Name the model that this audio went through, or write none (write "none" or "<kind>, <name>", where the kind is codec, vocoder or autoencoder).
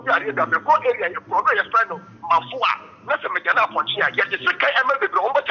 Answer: none